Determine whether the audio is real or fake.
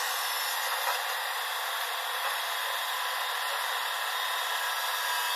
real